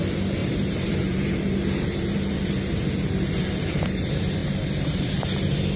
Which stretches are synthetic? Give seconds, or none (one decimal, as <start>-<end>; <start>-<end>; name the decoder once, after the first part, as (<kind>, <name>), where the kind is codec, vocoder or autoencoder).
0.4-2.5 (vocoder, BigVGAN v2); 4.4-5.1